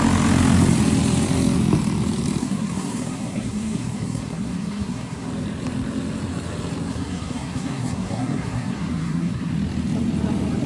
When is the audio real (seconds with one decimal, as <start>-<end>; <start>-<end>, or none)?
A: 0.0-2.4; 5.3-6.9; 9.5-10.7